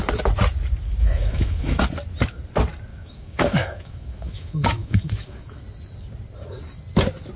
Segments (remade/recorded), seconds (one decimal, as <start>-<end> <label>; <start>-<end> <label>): 0.0-1.0 recorded; 1.0-1.8 remade; 1.8-2.9 recorded; 2.9-5.6 remade; 5.6-7.4 recorded